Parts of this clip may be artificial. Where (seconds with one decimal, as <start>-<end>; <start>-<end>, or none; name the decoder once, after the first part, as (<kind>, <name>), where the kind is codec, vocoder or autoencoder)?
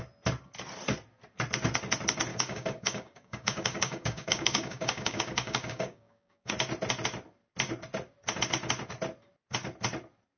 2.3-6.5 (codec, DAC)